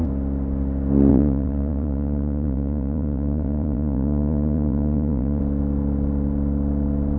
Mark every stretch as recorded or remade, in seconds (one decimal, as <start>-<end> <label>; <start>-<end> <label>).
0.0-1.1 recorded; 1.1-5.4 remade; 5.4-7.2 recorded